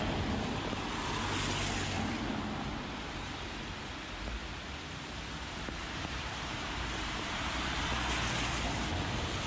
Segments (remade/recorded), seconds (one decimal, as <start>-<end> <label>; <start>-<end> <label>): 0.0-5.8 recorded; 5.8-7.8 remade; 7.8-9.5 recorded